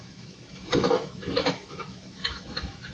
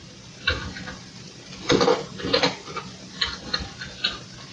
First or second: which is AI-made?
first